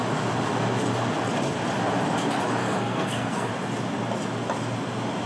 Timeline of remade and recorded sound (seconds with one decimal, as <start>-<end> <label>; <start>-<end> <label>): 0.0-2.6 recorded; 2.6-3.5 remade; 3.5-5.3 recorded